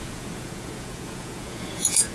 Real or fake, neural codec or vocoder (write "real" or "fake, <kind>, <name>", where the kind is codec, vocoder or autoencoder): fake, vocoder, Vocos